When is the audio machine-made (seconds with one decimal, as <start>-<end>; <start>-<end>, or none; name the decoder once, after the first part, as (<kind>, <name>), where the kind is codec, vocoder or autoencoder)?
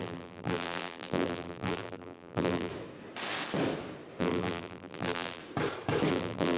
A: 0.0-2.7 (vocoder, BigVGAN v2); 4.2-5.4; 6.1-6.6